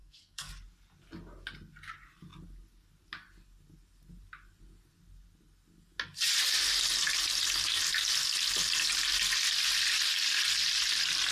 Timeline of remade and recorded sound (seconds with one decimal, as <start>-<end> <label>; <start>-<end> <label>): 0.0-0.5 remade; 0.5-11.3 recorded